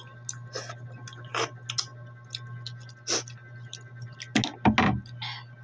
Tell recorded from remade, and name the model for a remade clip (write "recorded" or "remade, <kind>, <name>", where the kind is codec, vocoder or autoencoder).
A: recorded